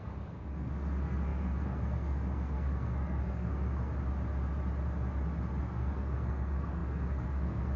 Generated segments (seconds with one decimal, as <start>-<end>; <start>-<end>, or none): 0.0-3.9; 5.6-7.8